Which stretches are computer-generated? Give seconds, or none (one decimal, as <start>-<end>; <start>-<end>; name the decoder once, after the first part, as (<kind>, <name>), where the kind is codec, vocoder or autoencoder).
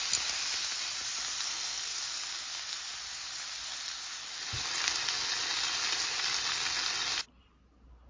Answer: 1.5-2.0 (codec, SNAC)